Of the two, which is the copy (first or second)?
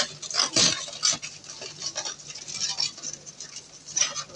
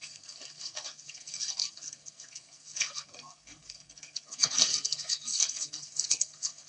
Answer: second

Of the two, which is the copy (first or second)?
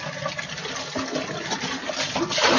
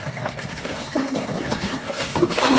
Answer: second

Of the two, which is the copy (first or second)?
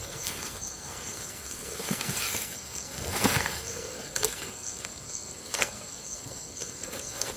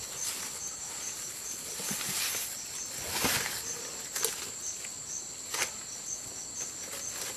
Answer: first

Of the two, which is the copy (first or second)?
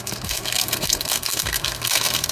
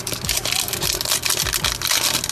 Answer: first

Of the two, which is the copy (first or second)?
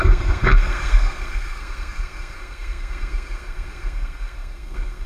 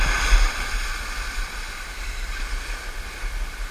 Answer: first